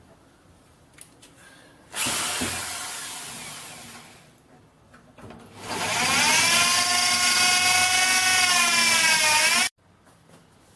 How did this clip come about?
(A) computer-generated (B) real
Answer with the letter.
B